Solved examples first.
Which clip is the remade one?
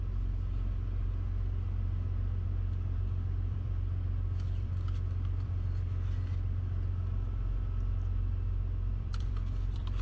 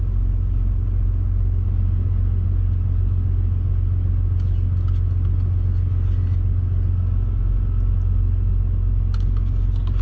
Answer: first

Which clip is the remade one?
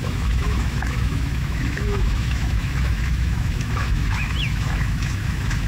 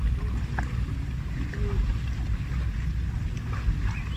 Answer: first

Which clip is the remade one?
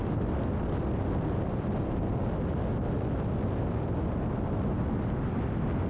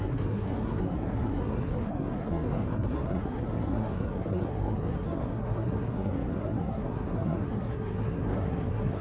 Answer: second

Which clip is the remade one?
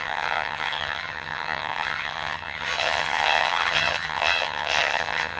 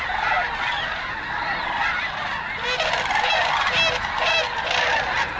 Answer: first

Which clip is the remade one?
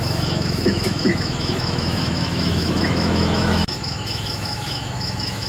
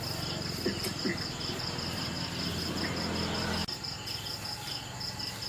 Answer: first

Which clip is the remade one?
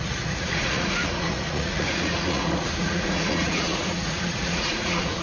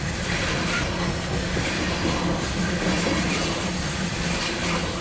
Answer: first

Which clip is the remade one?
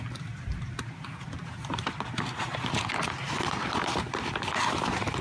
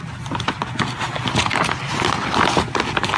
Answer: first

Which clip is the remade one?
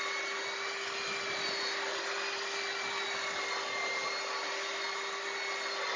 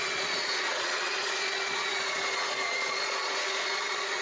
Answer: second